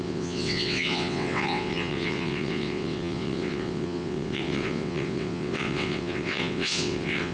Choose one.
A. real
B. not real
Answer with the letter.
B